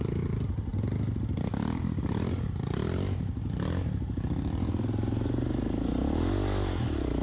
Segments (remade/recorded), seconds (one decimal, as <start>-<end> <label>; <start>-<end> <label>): 0.0-7.2 recorded